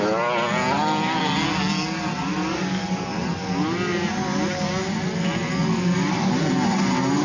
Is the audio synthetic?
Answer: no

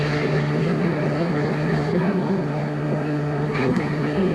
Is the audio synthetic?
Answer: yes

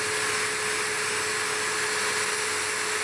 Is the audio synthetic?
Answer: no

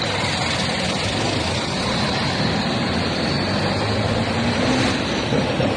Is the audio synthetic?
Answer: no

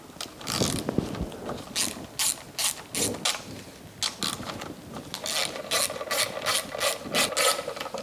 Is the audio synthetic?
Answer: no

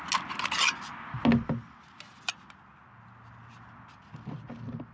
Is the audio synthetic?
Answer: no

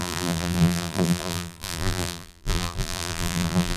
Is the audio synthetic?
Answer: yes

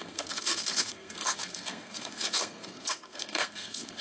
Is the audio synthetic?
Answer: yes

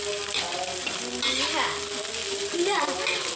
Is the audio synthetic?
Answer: no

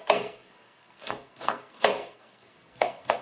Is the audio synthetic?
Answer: yes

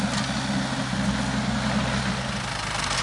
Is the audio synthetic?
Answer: no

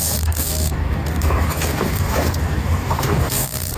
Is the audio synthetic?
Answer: yes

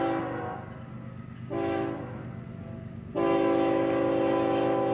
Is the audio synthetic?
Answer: no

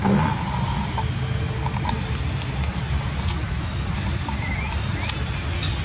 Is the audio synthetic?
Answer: no